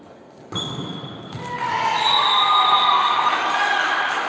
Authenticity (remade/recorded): recorded